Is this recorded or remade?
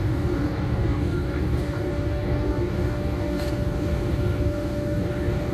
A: remade